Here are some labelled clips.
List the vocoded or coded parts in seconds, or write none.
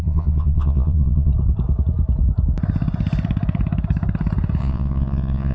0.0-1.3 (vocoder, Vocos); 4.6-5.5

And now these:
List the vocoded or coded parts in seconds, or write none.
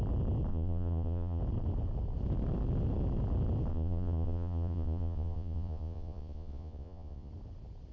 0.5-1.4 (vocoder, Vocos); 3.7-7.3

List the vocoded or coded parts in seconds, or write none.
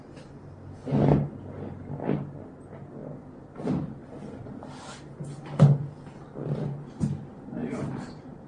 7.6-8.5 (vocoder, BigVGAN v2)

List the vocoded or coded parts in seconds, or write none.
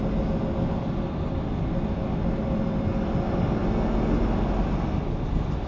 none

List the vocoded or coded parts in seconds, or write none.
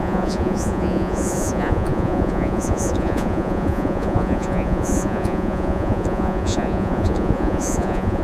0.0-8.2 (vocoder, Vocos)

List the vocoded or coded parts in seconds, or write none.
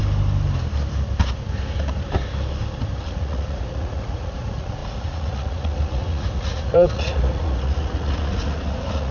3.0-9.1 (vocoder, Vocos)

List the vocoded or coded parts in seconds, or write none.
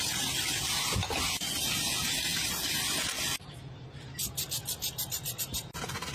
none